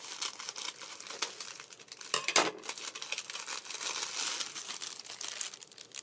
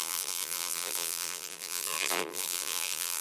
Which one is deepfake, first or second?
second